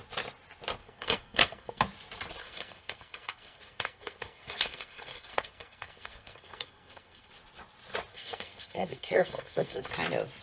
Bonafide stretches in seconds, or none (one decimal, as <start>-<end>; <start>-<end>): 0.0-0.8; 1.8-2.4; 7.3-8.1; 9.9-10.4